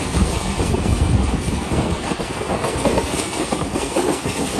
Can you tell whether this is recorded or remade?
remade